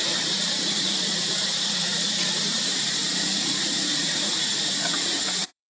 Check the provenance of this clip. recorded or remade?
remade